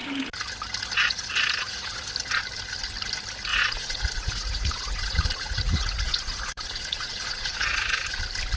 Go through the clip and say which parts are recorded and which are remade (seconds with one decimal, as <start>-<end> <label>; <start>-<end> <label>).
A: 0.0-1.0 recorded; 1.0-2.1 remade; 2.1-3.5 recorded; 3.5-8.2 remade; 8.2-8.6 recorded